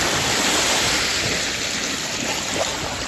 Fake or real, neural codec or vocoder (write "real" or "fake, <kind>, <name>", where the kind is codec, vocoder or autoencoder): real